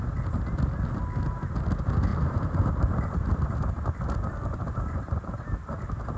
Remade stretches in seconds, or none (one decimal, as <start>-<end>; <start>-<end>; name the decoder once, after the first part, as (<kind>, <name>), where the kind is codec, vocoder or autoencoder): 2.1-5.8 (vocoder, BigVGAN v2)

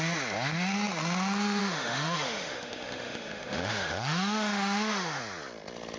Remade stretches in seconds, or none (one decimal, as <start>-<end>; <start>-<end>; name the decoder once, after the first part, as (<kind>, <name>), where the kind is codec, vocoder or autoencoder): 1.6-5.2 (autoencoder, DAC-VAE)

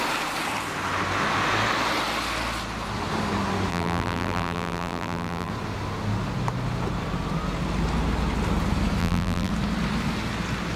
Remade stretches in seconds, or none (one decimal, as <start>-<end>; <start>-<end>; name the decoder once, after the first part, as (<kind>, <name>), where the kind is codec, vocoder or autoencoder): 3.7-5.5 (vocoder, BigVGAN v2); 9.0-9.5

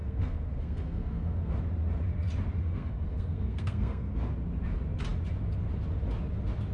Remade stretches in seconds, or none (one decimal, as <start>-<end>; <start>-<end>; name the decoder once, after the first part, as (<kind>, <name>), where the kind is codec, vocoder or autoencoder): 0.0-1.5 (codec, SNAC); 2.6-4.1

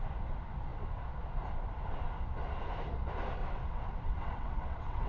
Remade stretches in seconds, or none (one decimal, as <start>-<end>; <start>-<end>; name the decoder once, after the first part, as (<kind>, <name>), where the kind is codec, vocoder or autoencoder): 3.4-5.1 (vocoder, WaveNeXt)

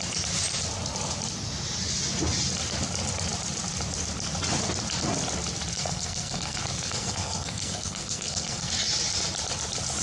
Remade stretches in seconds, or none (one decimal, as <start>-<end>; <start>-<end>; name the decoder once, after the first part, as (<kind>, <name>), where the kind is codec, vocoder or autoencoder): 5.7-8.7 (codec, SNAC)

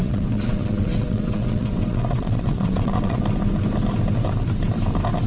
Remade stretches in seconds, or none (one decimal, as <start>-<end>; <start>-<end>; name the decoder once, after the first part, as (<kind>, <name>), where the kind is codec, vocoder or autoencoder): 0.0-3.2 (vocoder, WaveNeXt)